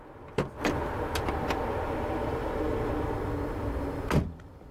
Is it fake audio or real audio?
real